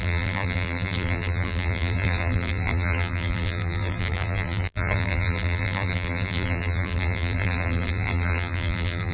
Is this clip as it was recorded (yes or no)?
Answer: no